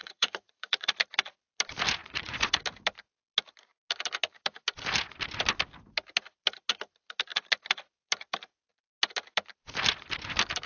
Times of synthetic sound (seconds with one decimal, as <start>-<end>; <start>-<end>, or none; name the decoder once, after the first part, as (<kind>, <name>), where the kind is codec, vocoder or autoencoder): 0.0-1.0 (vocoder, Vocos); 2.0-2.6